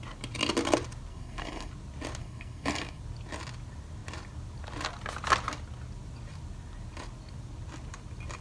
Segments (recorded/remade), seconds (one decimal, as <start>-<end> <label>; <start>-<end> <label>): 0.0-1.1 recorded; 1.1-1.7 remade; 1.7-2.2 recorded; 2.2-3.0 remade; 3.0-8.4 recorded